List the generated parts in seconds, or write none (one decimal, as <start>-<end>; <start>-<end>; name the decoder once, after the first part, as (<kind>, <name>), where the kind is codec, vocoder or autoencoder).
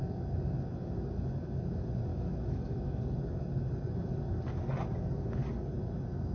2.1-3.0 (autoencoder, DAC-VAE)